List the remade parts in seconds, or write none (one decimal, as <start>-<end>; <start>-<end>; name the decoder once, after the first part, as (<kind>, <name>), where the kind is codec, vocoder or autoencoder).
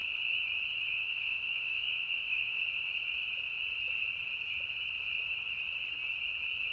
0.9-2.6 (autoencoder, DAC-VAE)